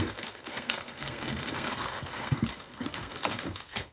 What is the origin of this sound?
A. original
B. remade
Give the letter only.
B